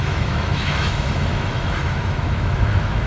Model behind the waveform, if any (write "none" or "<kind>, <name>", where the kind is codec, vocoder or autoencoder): autoencoder, DAC-VAE